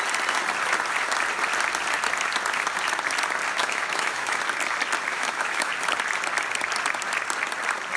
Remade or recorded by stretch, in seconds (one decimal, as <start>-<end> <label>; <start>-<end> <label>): 0.0-3.6 recorded; 3.6-4.4 remade; 4.4-5.1 recorded; 5.1-5.7 remade; 5.7-8.0 recorded